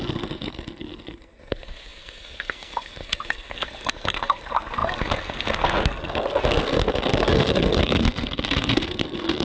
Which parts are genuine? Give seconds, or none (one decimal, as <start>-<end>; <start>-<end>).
none